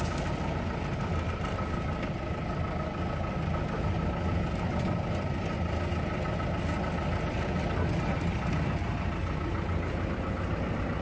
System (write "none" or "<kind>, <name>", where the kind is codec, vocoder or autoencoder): none